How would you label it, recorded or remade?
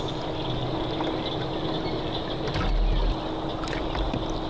recorded